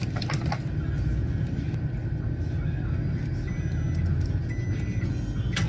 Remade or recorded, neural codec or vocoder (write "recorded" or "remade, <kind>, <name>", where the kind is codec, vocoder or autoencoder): recorded